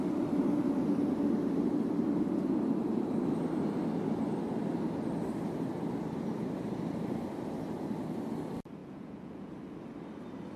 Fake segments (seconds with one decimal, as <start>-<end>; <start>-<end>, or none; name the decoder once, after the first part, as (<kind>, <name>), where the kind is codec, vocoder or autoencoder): 8.8-9.5 (vocoder, Vocos)

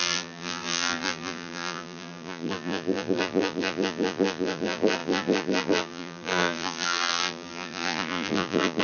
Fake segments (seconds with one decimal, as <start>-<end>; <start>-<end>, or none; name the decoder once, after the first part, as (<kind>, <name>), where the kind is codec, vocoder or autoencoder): 0.0-8.8 (vocoder, BigVGAN v2)

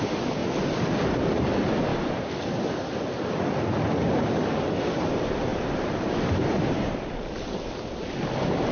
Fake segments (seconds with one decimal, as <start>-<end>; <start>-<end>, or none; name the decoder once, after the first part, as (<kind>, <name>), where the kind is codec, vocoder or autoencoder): 0.0-0.4 (vocoder, BigVGAN v2); 1.0-1.9; 4.8-5.5

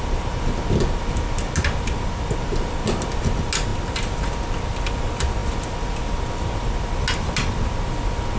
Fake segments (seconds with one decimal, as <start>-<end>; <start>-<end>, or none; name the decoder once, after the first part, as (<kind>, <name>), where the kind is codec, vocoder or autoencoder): none

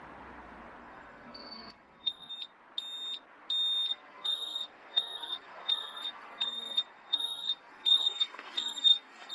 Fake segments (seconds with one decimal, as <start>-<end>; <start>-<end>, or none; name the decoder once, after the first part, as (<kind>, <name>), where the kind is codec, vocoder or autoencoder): 0.8-2.3 (codec, SNAC); 3.9-9.3

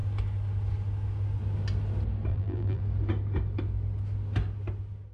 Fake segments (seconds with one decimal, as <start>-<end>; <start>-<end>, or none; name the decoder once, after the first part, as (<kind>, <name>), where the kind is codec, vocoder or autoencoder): 2.3-2.8 (vocoder, BigVGAN v2)

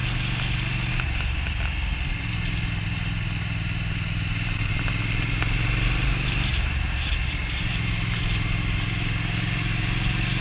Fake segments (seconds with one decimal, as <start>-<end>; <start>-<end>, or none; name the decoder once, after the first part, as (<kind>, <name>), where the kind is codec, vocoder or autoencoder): 0.9-10.4 (vocoder, BigVGAN v2)

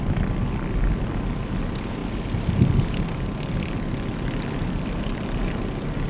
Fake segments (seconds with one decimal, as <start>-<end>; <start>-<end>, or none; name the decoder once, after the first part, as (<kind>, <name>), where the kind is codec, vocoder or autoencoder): none